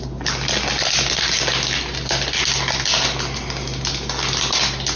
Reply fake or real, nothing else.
real